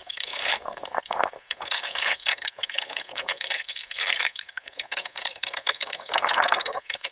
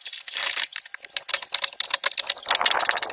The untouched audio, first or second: second